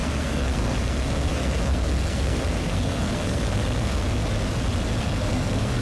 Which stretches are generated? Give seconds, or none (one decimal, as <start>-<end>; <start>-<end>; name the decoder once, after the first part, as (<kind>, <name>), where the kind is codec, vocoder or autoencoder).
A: 0.0-4.2 (codec, SNAC); 5.0-5.8